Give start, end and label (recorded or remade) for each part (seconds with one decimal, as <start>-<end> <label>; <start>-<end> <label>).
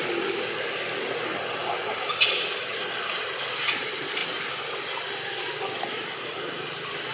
0.0-7.1 recorded